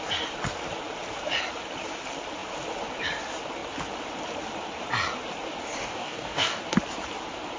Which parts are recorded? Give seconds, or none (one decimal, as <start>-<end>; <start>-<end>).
0.0-5.8; 6.6-7.6